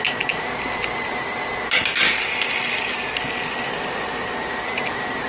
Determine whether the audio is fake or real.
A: real